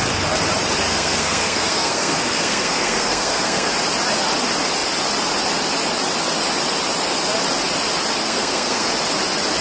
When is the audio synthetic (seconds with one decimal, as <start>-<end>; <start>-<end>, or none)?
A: 0.9-3.7; 8.2-8.9